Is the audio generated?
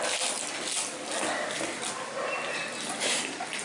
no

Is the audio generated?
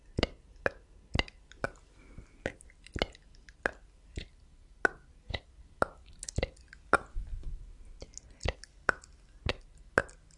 no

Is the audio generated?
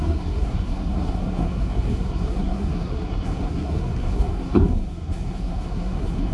yes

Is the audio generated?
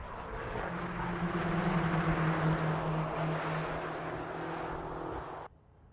no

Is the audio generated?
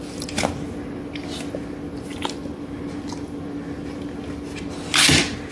no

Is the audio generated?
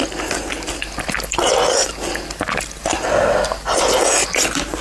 no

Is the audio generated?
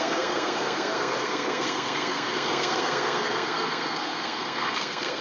yes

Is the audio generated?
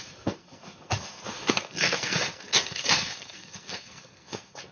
yes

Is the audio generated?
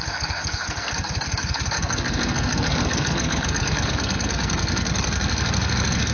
yes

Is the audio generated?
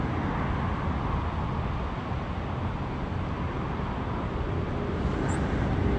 no